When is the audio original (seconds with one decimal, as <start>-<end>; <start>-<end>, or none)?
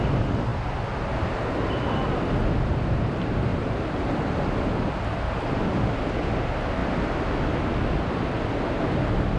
0.0-3.5; 4.4-9.4